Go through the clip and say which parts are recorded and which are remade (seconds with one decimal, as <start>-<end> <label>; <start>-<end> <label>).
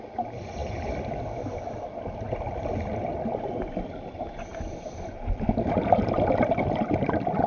0.0-7.5 recorded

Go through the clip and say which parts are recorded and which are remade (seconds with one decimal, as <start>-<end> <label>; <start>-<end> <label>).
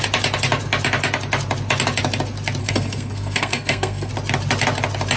0.0-2.6 recorded; 2.6-4.1 remade; 4.1-5.2 recorded